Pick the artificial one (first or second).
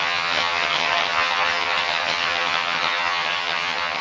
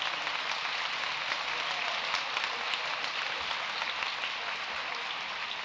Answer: first